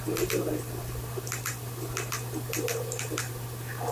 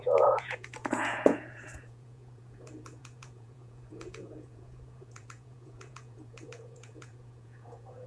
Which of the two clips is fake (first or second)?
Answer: second